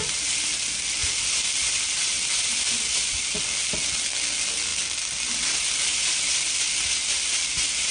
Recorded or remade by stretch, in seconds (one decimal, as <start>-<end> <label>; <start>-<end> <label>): 0.0-7.9 recorded